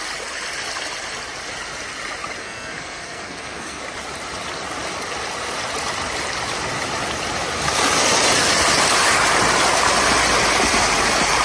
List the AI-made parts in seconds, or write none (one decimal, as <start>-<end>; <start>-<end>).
2.4-3.8